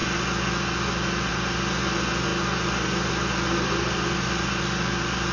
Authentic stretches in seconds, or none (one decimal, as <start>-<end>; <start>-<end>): 0.0-5.3

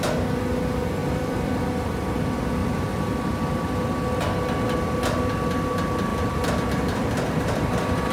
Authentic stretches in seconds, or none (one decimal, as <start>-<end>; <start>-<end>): 0.0-1.0; 1.6-2.6; 3.9-6.1

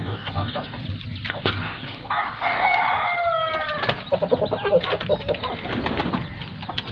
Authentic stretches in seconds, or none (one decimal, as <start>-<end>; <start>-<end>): 0.8-1.3; 2.8-6.9

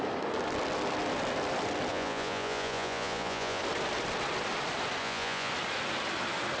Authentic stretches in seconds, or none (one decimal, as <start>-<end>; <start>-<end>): 0.0-1.9; 3.6-5.0; 5.5-6.6